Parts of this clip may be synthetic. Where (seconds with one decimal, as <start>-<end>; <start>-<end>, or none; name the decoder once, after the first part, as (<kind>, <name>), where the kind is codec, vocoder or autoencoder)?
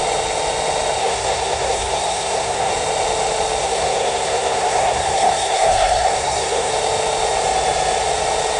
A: 1.0-2.7 (codec, SNAC); 3.6-6.7